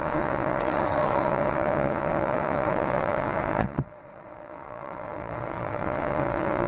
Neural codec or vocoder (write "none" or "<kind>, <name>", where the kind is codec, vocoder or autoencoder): vocoder, WaveNeXt